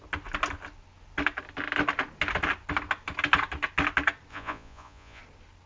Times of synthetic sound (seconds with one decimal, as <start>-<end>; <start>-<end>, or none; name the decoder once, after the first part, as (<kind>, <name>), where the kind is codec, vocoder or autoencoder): 4.3-5.2 (vocoder, Vocos)